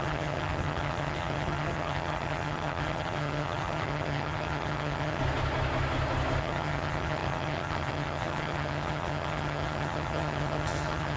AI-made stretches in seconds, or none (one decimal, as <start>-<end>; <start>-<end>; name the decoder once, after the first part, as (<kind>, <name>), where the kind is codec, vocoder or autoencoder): 0.0-5.2 (vocoder, HiFi-GAN); 6.4-11.2